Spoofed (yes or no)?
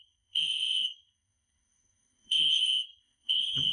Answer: yes